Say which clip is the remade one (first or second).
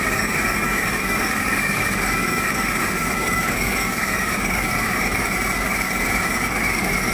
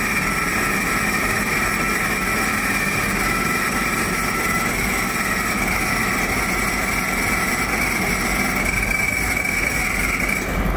first